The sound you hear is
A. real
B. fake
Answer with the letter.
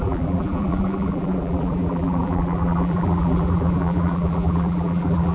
B